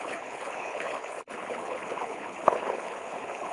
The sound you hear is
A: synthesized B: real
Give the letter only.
A